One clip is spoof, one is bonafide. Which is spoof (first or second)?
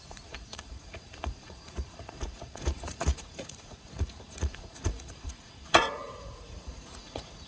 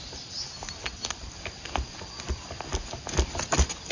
first